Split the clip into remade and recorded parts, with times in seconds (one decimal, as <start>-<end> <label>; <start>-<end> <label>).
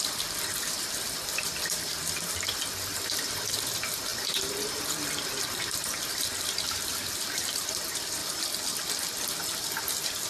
0.0-8.2 remade; 8.2-10.3 recorded